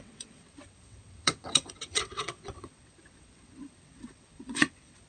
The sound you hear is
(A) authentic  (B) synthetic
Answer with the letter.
B